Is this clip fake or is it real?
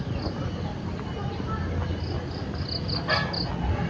real